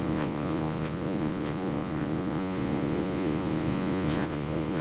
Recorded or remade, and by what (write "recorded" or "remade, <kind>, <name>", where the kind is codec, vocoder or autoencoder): remade, vocoder, Vocos